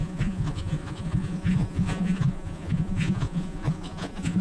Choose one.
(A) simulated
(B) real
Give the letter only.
A